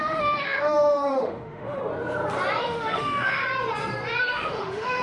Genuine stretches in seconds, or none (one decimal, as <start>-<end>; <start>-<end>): 1.8-2.6; 3.4-4.2